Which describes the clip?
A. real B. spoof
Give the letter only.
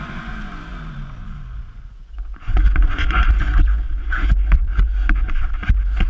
B